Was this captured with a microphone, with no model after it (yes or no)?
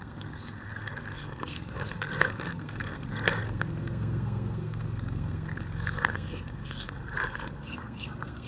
no